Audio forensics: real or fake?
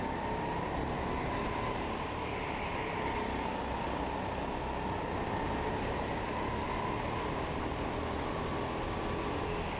real